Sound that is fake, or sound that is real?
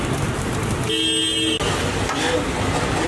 real